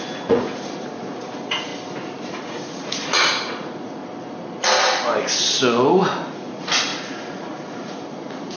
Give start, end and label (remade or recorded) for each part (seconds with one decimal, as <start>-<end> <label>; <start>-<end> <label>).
0.0-1.7 remade; 1.7-2.3 recorded; 2.3-4.0 remade; 4.0-6.0 recorded; 6.0-8.6 remade

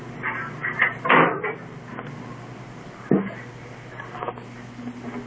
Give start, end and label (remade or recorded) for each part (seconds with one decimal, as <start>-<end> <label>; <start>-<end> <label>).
0.0-5.3 recorded

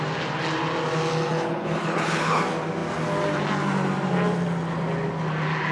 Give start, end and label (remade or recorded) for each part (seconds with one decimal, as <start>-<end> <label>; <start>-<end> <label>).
0.0-1.3 recorded; 1.3-2.4 remade; 2.4-5.7 recorded

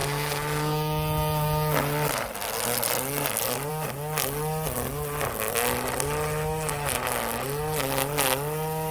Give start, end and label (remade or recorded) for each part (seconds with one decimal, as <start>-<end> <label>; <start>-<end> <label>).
0.0-8.9 recorded